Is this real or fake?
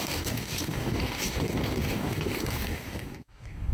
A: fake